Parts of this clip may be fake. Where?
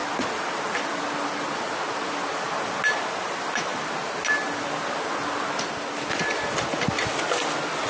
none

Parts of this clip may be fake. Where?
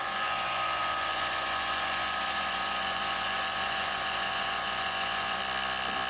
0.0-5.4 (vocoder, Vocos)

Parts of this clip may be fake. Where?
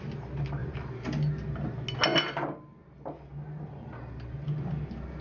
none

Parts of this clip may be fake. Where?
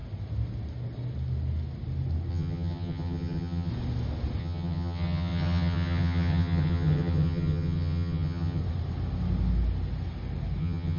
2.3-3.7 (vocoder, HiFi-GAN); 4.4-8.6; 10.6-11.0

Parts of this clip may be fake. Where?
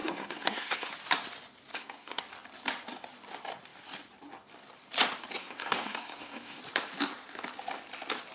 0.0-0.9 (codec, SNAC); 1.7-2.2; 5.4-6.6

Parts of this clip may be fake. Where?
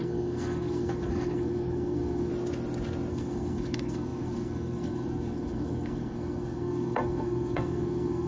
0.0-2.3 (codec, SNAC); 3.1-8.3